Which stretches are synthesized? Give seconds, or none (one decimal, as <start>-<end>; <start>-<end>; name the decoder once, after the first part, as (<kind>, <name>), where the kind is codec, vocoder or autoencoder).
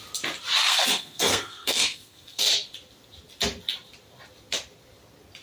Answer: 0.6-2.4 (codec, SNAC)